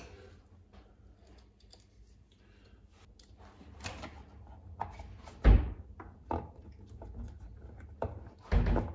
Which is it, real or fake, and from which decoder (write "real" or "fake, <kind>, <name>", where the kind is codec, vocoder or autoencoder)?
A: real